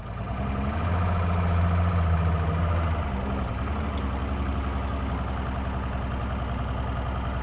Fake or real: real